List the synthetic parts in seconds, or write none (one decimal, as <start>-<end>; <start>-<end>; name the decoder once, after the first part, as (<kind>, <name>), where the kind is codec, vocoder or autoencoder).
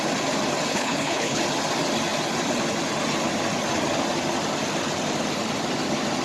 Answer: 0.7-1.4 (codec, HILCodec)